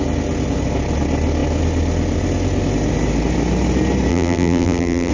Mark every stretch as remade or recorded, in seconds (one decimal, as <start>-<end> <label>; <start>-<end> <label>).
0.0-4.1 recorded; 4.1-5.1 remade